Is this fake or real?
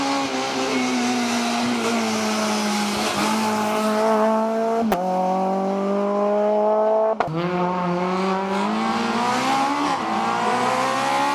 real